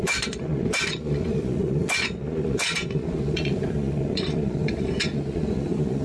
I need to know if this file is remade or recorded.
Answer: remade